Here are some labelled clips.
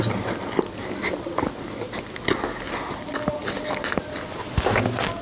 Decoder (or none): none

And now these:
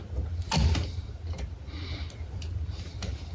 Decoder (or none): none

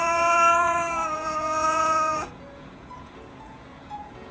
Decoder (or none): vocoder, Vocos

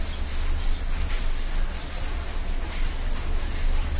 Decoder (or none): none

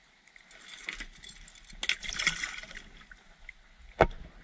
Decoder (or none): none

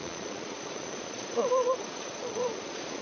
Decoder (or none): vocoder, Vocos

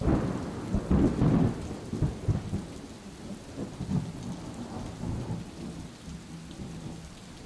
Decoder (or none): none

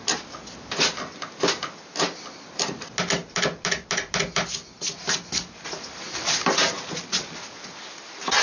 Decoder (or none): none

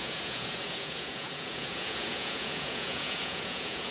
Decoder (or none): vocoder, Vocos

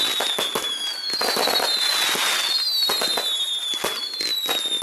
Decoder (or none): none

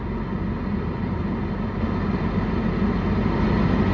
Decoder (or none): none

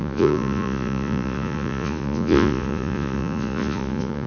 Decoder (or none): vocoder, Vocos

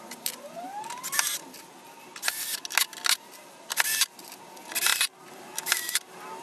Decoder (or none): none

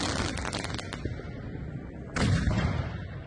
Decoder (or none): none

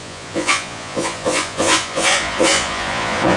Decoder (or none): vocoder, Vocos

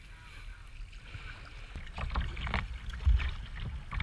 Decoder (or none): none